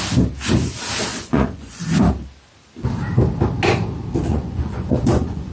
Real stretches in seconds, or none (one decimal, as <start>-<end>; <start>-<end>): 0.0-1.1; 1.8-4.3